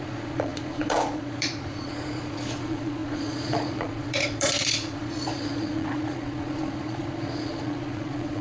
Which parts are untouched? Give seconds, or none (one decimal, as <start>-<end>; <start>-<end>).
none